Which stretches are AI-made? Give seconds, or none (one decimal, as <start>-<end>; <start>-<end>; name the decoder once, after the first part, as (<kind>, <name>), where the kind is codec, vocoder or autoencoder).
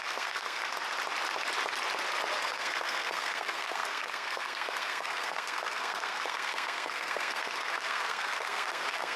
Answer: 0.0-0.6 (codec, SNAC); 2.4-9.2